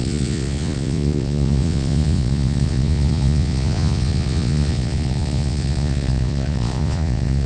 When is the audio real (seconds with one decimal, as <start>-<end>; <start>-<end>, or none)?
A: none